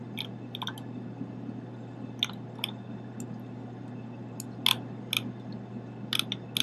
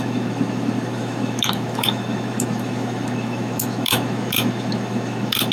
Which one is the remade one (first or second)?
second